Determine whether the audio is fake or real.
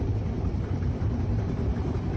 fake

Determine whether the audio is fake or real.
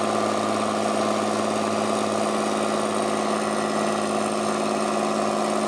real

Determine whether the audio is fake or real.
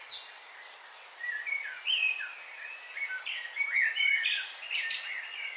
real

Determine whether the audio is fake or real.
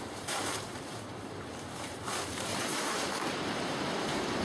fake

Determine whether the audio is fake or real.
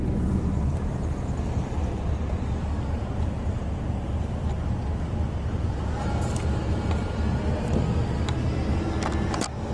real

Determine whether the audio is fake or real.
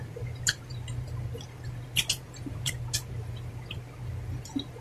real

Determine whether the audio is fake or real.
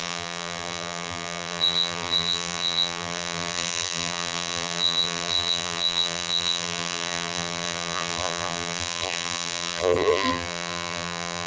fake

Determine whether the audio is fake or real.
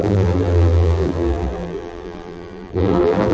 fake